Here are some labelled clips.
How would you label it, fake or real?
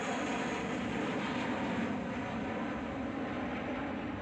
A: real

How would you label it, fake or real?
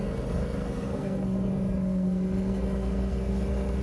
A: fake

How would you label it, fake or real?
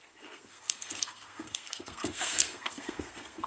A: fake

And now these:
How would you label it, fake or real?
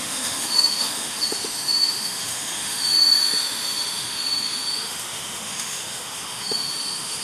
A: fake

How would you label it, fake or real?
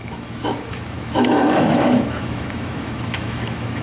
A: fake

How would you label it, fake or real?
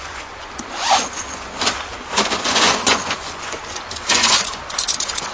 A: fake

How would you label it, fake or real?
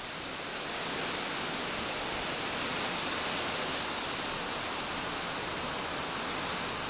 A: real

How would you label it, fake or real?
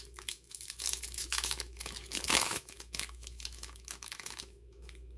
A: fake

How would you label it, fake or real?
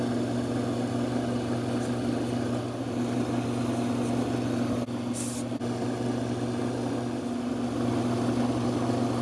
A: real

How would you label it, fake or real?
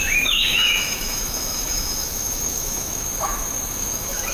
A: fake